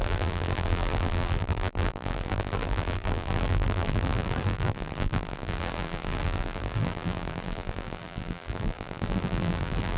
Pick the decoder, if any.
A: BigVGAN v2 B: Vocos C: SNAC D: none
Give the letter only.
A